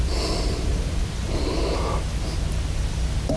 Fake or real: real